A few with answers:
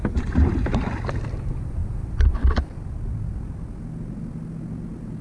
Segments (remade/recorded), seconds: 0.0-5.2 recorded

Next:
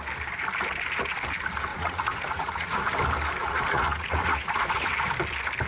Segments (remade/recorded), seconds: 0.0-1.7 recorded; 1.7-2.8 remade; 2.8-3.4 recorded; 3.4-4.9 remade; 4.9-5.7 recorded

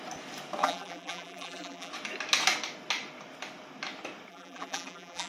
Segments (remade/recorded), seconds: 0.0-0.6 recorded; 0.6-1.9 remade; 1.9-4.3 recorded; 4.3-5.3 remade

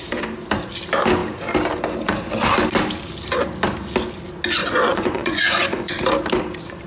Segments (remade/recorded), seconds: 0.0-4.6 recorded; 4.6-5.9 remade; 5.9-6.9 recorded